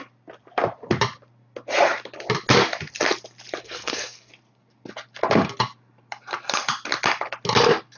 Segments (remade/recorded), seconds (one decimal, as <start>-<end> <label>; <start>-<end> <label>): 0.0-3.6 recorded; 3.6-4.3 remade; 4.3-8.0 recorded